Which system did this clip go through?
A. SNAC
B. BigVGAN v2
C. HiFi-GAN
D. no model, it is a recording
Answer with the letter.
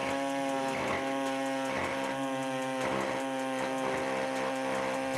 D